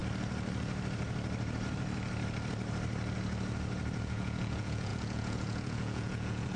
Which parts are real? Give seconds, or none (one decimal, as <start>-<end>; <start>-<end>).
0.0-4.0

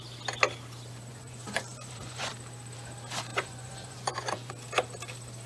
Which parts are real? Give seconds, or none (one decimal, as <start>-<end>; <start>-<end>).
0.0-1.1; 2.3-3.3; 4.5-5.5

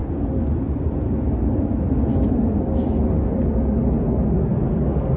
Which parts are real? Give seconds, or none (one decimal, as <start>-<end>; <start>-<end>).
0.0-5.2

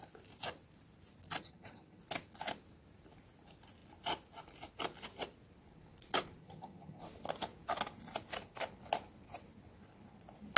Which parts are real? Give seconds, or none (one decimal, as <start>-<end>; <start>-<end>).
0.0-1.4; 2.0-6.4; 7.0-10.6

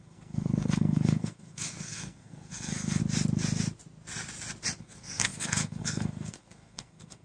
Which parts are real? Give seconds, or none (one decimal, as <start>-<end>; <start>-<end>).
3.0-4.8

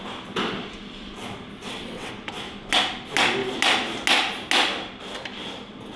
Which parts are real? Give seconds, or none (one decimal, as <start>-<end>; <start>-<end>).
0.0-1.5; 2.1-6.0

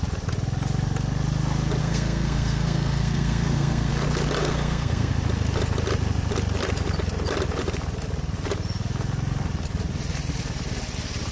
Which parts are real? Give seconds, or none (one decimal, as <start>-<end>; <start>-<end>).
0.0-1.8; 3.9-4.4; 5.1-11.3